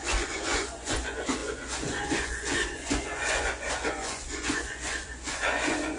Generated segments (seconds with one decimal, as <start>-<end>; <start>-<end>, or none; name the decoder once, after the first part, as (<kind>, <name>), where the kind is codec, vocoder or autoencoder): 0.0-6.0 (vocoder, Vocos)